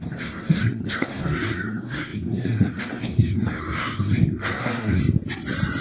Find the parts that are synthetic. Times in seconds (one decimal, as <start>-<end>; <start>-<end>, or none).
0.0-5.0